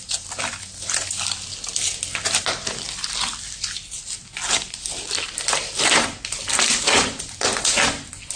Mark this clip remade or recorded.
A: recorded